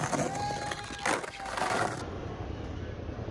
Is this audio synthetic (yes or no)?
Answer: no